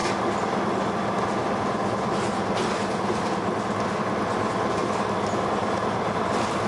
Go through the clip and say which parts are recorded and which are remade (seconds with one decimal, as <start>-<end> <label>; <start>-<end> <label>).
0.0-4.0 recorded; 4.0-6.7 remade